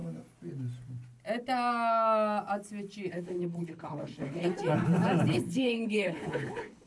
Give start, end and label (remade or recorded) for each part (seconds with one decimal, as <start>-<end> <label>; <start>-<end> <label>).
0.0-3.1 recorded; 3.1-4.5 remade; 4.5-5.3 recorded; 5.3-6.9 remade